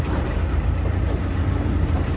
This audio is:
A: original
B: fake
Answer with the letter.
B